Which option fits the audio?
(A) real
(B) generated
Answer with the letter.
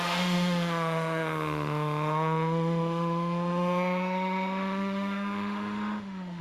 B